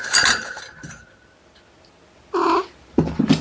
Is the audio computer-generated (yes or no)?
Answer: no